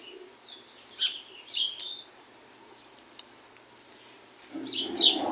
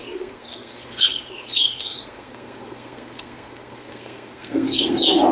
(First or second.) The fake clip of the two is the second